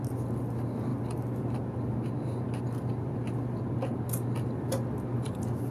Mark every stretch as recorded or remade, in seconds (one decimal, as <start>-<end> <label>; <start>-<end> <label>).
0.0-5.7 recorded